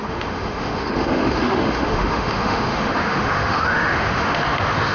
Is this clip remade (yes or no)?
yes